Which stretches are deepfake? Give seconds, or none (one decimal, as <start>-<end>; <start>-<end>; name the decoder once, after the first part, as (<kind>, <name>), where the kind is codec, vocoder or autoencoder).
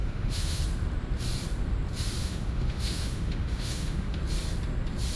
0.0-0.6 (autoencoder, DAC-VAE); 2.2-4.2